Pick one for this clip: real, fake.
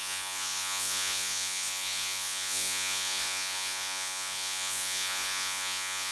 fake